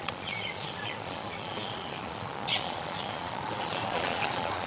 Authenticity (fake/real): fake